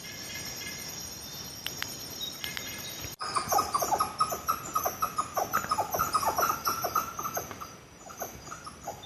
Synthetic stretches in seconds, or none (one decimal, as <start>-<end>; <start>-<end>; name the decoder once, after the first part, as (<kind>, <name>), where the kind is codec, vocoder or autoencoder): 0.0-3.5 (vocoder, BigVGAN v2); 7.5-9.1